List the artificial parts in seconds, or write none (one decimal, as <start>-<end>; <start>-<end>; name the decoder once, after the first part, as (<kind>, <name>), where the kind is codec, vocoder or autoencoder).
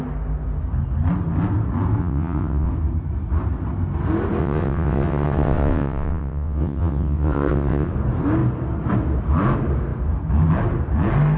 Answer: 2.0-2.7 (vocoder, WaveNeXt); 4.4-7.9